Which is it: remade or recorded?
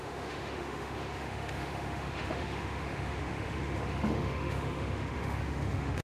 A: remade